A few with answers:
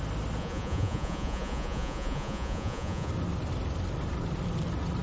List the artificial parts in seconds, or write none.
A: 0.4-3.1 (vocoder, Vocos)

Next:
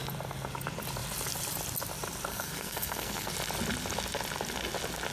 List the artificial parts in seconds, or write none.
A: 2.3-3.3 (codec, SNAC)

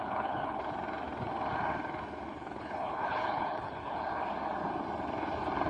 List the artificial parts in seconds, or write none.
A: 0.0-0.6 (codec, HILCodec); 2.3-4.1

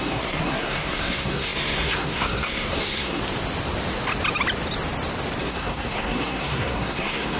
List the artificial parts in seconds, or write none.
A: 0.0-3.2 (codec, SNAC); 5.4-7.4